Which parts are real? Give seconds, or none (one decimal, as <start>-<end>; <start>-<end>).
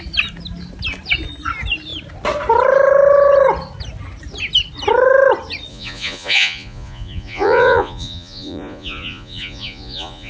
0.0-5.7